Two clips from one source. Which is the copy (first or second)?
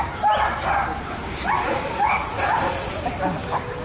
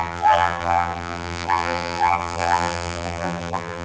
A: second